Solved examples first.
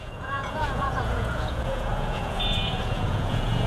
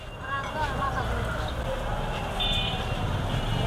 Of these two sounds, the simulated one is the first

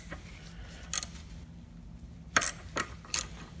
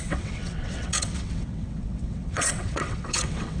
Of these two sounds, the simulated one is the second